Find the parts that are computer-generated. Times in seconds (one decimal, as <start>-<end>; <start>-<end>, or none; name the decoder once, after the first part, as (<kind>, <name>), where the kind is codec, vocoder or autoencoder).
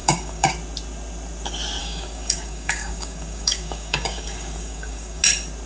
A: 0.0-0.5 (codec, DAC); 1.8-5.2